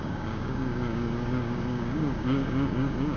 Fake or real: fake